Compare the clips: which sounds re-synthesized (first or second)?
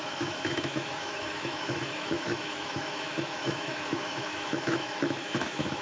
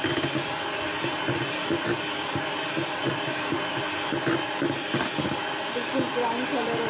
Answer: first